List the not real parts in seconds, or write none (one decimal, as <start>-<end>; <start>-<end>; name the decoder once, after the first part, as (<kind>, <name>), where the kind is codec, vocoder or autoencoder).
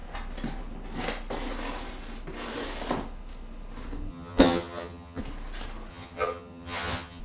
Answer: 4.1-5.2 (vocoder, HiFi-GAN); 5.9-7.2